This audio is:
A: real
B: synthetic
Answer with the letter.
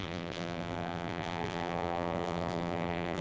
B